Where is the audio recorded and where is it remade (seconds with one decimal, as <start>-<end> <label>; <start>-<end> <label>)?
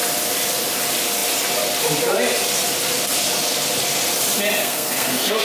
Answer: 0.0-4.6 recorded; 4.6-5.4 remade